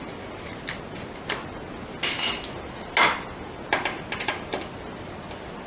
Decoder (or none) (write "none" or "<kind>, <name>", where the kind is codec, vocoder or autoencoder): none